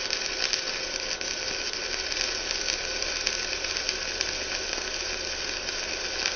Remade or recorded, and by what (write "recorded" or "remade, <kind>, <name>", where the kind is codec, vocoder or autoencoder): recorded